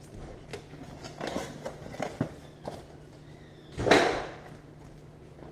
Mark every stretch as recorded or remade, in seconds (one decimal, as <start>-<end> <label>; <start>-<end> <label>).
0.0-5.5 recorded